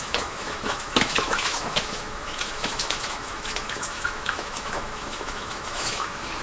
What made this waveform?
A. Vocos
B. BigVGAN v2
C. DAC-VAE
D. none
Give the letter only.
C